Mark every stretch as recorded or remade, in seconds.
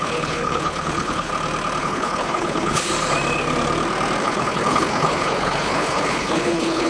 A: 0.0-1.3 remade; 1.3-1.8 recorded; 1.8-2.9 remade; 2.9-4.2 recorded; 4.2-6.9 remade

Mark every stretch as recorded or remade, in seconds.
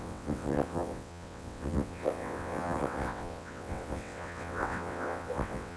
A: 0.0-5.8 remade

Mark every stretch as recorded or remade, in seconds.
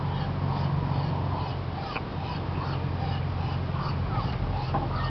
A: 0.0-5.1 recorded